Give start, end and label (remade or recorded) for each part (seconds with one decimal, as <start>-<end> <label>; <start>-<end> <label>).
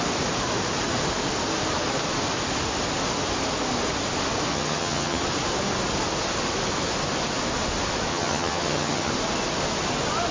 0.0-4.5 recorded; 4.5-5.2 remade; 5.2-8.1 recorded; 8.1-9.1 remade; 9.1-10.3 recorded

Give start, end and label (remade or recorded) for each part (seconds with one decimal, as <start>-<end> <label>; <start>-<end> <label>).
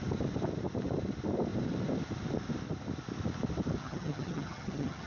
0.0-3.8 recorded; 3.8-5.1 remade